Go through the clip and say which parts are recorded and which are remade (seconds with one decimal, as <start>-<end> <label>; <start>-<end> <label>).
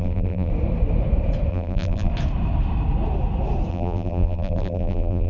0.0-0.5 remade; 0.5-1.5 recorded; 1.5-2.1 remade; 2.1-3.7 recorded; 3.7-5.3 remade